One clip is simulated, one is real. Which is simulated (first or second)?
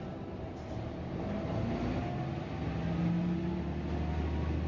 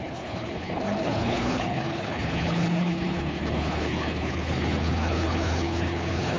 second